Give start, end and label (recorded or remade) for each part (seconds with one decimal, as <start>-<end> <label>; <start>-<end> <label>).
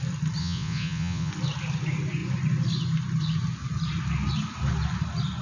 0.0-0.4 recorded; 0.4-1.3 remade; 1.3-5.4 recorded